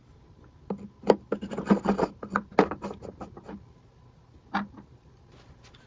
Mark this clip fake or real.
real